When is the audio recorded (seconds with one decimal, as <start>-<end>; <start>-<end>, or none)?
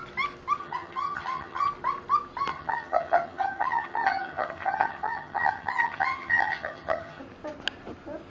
0.0-0.6; 1.7-2.5; 7.2-8.3